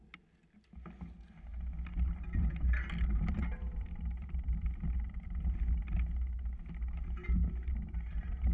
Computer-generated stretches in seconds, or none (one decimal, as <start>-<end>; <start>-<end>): none